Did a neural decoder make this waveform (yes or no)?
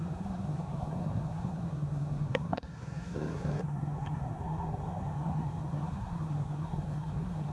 yes